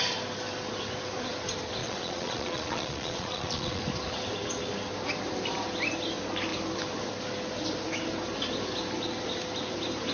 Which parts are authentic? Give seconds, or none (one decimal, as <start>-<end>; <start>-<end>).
0.0-1.8; 3.8-10.1